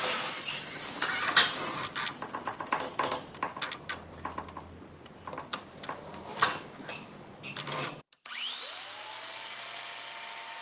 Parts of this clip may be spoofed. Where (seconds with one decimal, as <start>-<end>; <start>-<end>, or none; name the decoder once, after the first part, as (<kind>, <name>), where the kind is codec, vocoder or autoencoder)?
none